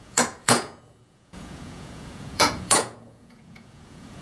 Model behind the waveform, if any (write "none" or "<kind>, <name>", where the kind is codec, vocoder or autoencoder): vocoder, Vocos